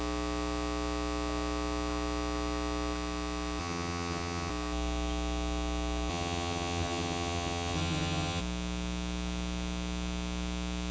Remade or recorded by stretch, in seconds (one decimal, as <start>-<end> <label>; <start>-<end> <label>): 0.0-3.6 recorded; 3.6-4.5 remade; 4.5-6.1 recorded; 6.1-8.4 remade; 8.4-10.9 recorded